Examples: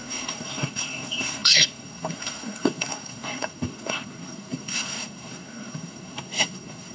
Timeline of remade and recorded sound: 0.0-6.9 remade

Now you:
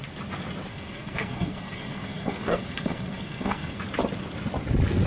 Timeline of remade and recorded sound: 0.0-0.7 recorded; 0.7-3.8 remade; 3.8-5.1 recorded

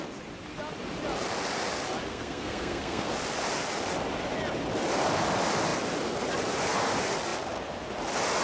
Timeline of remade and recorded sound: 0.0-2.1 recorded; 2.1-3.1 remade; 3.1-8.4 recorded

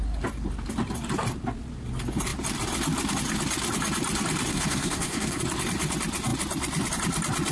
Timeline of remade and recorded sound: 0.0-4.5 recorded; 4.5-5.4 remade; 5.4-7.5 recorded

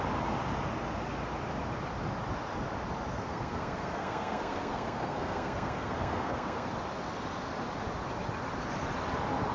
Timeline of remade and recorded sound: 0.0-3.1 recorded; 3.1-6.7 remade; 6.7-9.5 recorded